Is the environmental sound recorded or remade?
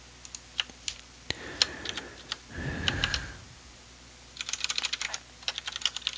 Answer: recorded